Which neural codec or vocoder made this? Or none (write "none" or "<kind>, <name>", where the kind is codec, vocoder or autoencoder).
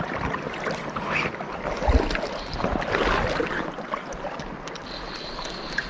none